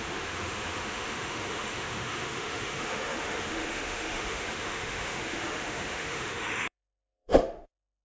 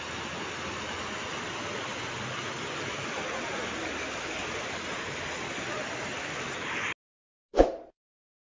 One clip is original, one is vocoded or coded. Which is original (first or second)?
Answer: second